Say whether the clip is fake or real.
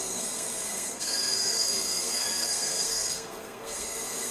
fake